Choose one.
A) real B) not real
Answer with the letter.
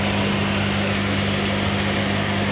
A